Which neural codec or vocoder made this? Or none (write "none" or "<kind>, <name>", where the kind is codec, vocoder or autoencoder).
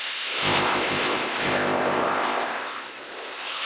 codec, ZipCodec